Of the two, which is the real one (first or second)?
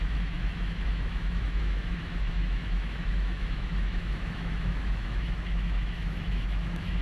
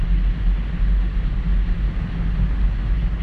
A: second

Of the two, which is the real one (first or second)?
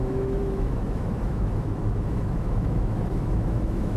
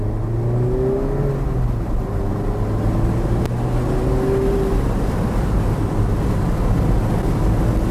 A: second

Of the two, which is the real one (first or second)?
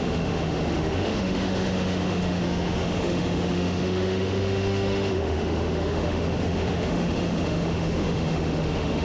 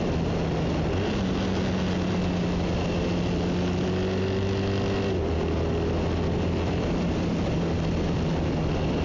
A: second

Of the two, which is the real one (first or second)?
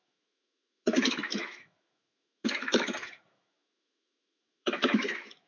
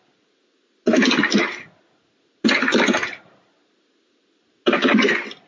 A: second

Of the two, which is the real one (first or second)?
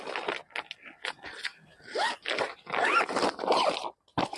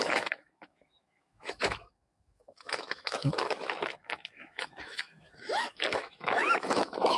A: first